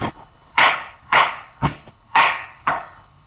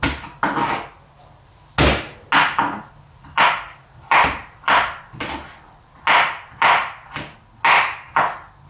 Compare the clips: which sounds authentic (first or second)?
second